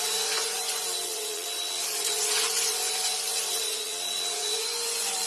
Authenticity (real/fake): fake